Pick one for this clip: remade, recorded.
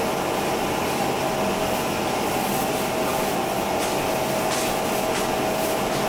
recorded